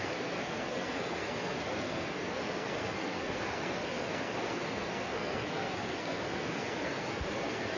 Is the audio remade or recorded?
remade